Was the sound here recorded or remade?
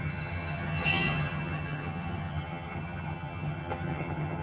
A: remade